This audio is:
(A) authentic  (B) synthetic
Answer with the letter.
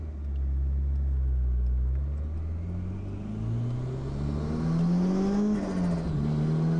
A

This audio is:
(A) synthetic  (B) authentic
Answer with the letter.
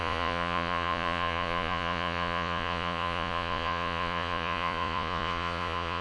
A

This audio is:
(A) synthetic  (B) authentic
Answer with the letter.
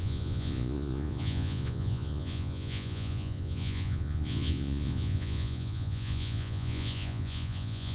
A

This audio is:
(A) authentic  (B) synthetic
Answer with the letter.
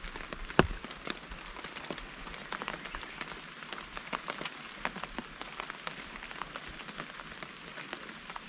A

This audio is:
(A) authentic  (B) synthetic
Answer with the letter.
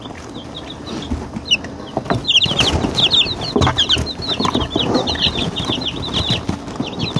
A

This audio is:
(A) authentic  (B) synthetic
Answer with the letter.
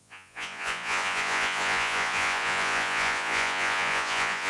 B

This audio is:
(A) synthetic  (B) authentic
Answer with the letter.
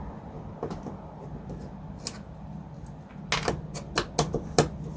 B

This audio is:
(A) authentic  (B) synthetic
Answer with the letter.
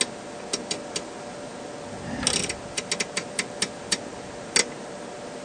A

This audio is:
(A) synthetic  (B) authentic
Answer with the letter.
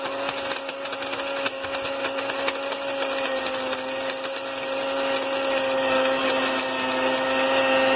B